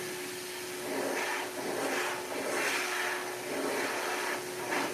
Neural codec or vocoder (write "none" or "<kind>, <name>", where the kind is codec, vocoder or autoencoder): none